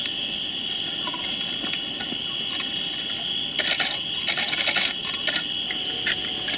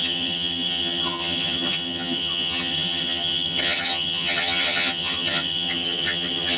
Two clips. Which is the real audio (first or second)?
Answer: first